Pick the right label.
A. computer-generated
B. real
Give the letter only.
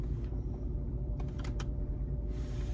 A